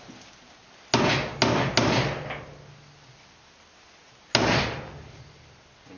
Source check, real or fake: real